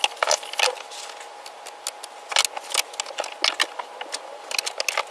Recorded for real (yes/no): yes